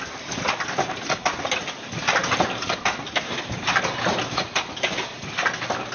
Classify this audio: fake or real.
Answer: real